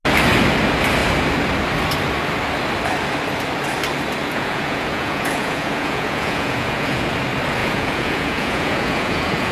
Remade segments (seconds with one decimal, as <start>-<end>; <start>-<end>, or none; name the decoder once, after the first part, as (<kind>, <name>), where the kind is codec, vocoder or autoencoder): 4.2-7.1 (vocoder, Vocos); 7.6-9.5